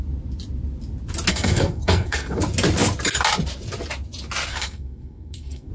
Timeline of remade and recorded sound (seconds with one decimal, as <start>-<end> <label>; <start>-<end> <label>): 0.0-1.3 recorded; 1.3-2.4 remade; 2.4-4.5 recorded; 4.5-5.7 remade